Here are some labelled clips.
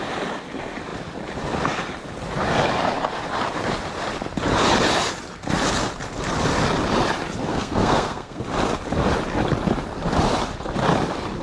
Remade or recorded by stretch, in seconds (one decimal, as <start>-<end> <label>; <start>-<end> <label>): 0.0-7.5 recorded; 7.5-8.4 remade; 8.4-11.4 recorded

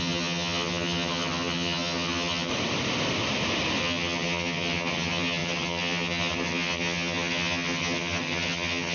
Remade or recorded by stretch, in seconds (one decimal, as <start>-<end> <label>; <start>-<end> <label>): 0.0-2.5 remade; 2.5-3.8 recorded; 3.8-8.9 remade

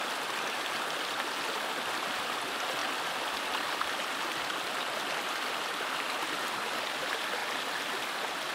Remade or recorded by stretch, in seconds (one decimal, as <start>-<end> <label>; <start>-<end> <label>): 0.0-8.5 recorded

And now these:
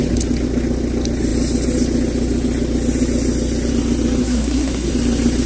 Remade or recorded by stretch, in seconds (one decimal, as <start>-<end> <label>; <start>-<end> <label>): 0.0-4.2 recorded; 4.2-4.9 remade; 4.9-5.5 recorded

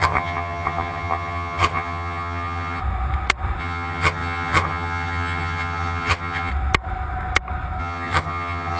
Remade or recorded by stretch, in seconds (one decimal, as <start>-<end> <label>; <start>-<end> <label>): 0.0-2.8 remade; 2.8-3.6 recorded; 3.6-6.5 remade; 6.5-7.8 recorded; 7.8-8.8 remade

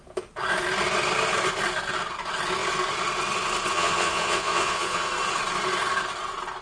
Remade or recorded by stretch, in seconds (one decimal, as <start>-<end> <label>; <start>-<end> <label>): 0.0-3.7 recorded; 3.7-5.1 remade; 5.1-6.6 recorded

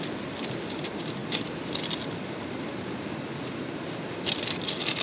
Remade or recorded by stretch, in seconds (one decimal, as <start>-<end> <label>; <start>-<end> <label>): 0.0-1.2 recorded; 1.2-4.2 remade; 4.2-5.0 recorded

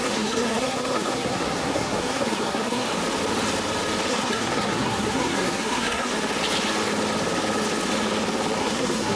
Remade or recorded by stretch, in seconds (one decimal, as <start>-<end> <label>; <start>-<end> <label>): 0.0-2.9 remade; 2.9-4.1 recorded; 4.1-6.1 remade; 6.1-8.6 recorded; 8.6-9.2 remade